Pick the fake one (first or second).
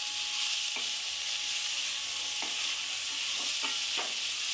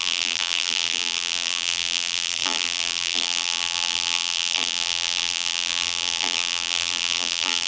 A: second